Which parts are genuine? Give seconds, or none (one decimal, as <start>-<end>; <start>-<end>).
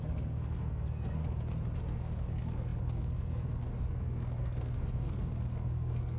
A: 1.2-1.8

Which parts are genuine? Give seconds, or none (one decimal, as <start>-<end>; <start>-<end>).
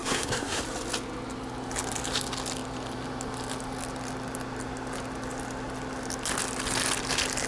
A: 0.6-7.5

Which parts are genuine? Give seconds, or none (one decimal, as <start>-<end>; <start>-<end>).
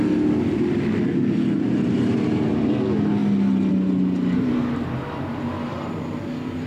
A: 0.0-6.7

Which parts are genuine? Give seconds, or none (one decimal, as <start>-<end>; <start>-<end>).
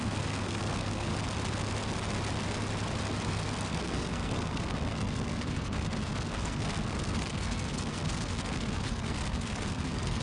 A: 1.1-3.3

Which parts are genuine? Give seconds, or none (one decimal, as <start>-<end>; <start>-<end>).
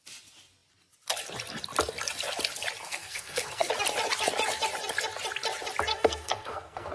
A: 0.0-2.8; 3.7-5.9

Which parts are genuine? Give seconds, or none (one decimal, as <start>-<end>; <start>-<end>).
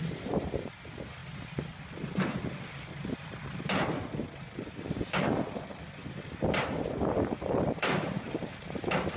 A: 0.0-9.2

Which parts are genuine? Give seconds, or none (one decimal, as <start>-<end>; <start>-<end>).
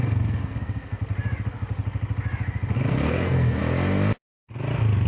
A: 1.0-2.9; 3.6-5.1